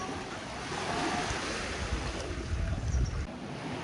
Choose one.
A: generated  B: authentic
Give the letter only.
B